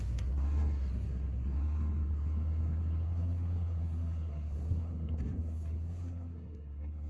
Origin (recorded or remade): remade